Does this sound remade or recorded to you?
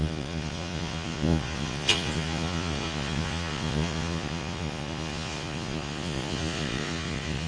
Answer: remade